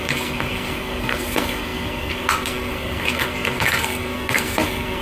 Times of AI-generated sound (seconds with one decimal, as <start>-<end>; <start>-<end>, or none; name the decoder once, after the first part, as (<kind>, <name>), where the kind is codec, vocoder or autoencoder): 0.0-5.0 (codec, SNAC)